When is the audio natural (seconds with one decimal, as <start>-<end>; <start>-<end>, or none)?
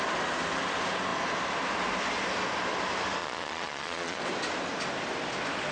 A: 0.0-3.2; 4.2-5.7